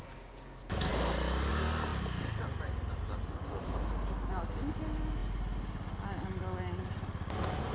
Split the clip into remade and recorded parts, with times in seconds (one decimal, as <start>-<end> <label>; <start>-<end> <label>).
0.0-7.7 recorded